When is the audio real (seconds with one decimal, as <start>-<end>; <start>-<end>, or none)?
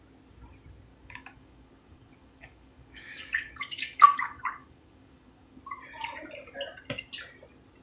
0.0-0.9; 5.6-7.8